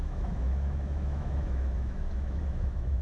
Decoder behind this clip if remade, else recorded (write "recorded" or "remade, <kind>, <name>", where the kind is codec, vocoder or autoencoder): remade, autoencoder, DAC-VAE